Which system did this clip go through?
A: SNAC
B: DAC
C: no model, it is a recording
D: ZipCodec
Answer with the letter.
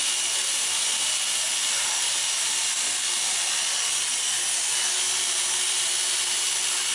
C